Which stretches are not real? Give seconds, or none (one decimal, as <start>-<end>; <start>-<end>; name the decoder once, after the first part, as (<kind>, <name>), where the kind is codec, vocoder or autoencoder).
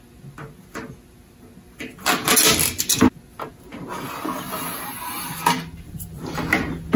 none